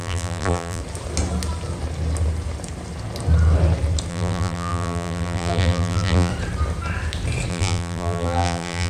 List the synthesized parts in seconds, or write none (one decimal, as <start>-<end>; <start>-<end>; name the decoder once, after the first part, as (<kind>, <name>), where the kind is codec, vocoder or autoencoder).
0.0-0.8 (vocoder, BigVGAN v2); 4.1-6.3; 7.5-8.9